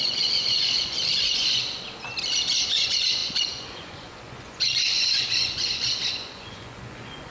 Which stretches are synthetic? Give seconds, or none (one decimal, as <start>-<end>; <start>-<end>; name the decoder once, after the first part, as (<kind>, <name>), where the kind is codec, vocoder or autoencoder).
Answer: 0.0-1.6 (vocoder, Vocos); 2.6-7.3